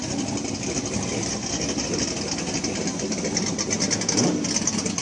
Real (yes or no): yes